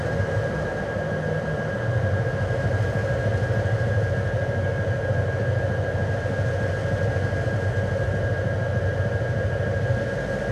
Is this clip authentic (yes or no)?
yes